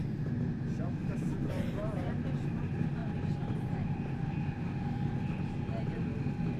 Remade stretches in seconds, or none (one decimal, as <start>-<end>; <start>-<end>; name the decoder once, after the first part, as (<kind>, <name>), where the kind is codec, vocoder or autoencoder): 1.0-1.6 (vocoder, BigVGAN v2)